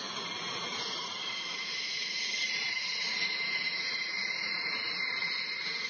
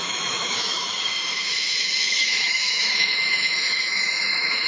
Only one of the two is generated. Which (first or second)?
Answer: second